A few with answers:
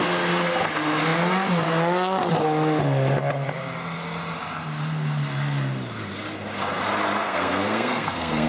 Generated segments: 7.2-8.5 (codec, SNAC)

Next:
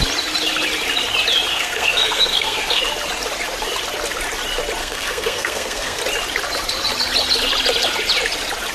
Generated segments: 1.5-2.8 (codec, SNAC); 4.8-6.0

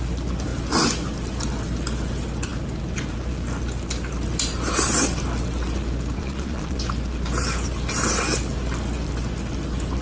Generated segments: 6.2-6.8 (vocoder, Vocos)

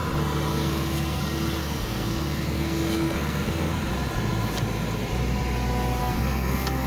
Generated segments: 0.5-1.2 (codec, SNAC); 1.6-3.9; 6.0-6.9

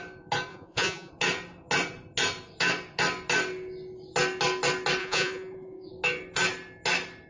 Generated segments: 0.5-1.1 (vocoder, Vocos); 5.0-5.9

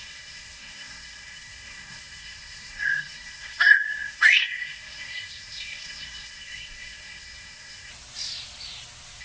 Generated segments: 0.0-7.9 (codec, SNAC)

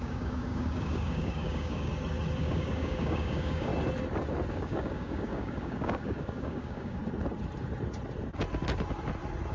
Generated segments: 0.0-1.9 (codec, DAC); 2.4-3.7; 4.5-7.0